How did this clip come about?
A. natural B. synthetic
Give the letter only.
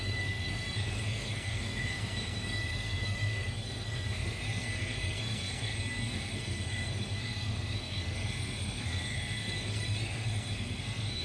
B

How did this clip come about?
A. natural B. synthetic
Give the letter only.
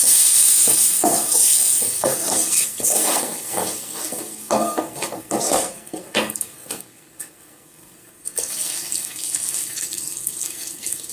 B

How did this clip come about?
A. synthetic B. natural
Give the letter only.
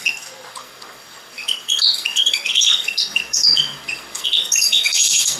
A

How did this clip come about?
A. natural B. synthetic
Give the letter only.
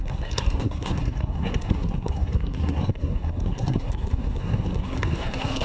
B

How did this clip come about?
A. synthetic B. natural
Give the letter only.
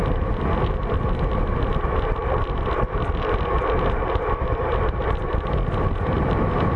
B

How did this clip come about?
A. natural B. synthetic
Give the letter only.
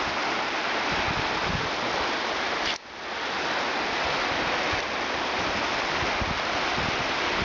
A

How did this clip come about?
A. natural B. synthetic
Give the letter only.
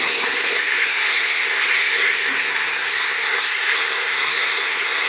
B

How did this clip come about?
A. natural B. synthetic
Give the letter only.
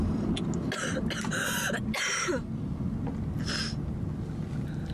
A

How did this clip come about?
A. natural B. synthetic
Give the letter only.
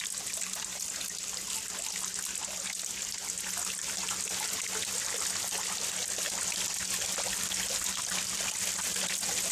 A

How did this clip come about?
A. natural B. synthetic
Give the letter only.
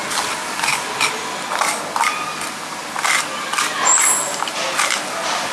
A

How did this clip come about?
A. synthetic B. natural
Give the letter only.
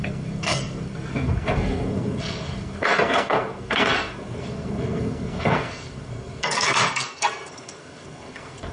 A